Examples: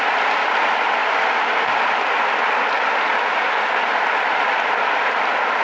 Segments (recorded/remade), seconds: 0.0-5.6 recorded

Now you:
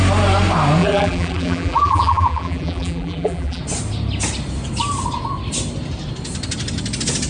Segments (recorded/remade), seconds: 0.0-0.8 recorded; 0.8-3.6 remade; 3.6-7.3 recorded